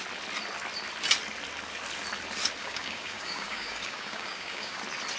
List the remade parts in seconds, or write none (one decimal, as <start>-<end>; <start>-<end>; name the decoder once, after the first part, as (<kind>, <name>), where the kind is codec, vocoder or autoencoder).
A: 2.6-4.8 (codec, DAC)